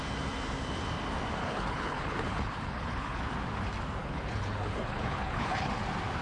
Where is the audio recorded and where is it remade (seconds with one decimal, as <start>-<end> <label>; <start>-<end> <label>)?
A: 0.0-1.4 recorded; 1.4-3.2 remade; 3.2-4.0 recorded; 4.0-5.7 remade; 5.7-6.2 recorded